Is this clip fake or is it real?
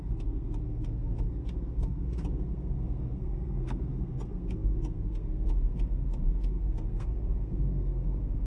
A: fake